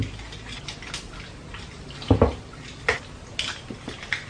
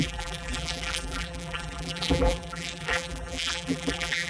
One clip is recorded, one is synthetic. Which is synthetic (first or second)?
second